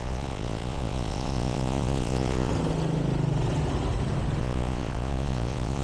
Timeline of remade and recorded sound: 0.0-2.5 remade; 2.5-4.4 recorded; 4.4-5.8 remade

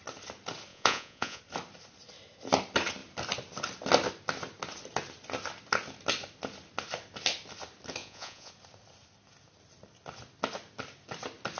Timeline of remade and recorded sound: 0.0-0.7 recorded; 0.7-1.4 remade; 1.4-8.0 recorded; 8.0-8.5 remade; 8.5-11.6 recorded

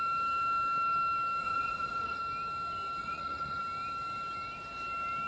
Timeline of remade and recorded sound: 0.0-1.4 recorded; 1.4-2.2 remade; 2.2-3.0 recorded; 3.0-3.6 remade; 3.6-5.3 recorded

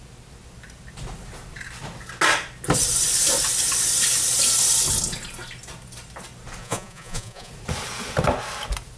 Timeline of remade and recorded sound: 0.0-6.6 recorded; 6.6-7.5 remade; 7.5-9.0 recorded

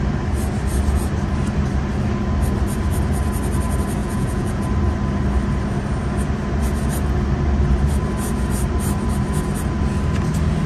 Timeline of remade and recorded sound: 0.0-4.0 recorded; 4.0-4.6 remade; 4.6-10.7 recorded

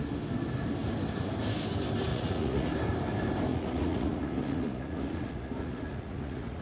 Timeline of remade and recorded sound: 0.0-2.1 recorded; 2.1-2.7 remade; 2.7-3.5 recorded; 3.5-6.6 remade

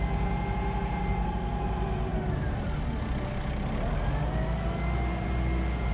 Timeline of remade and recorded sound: 0.0-5.9 recorded